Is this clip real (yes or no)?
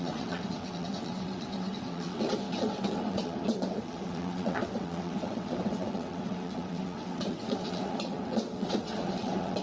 no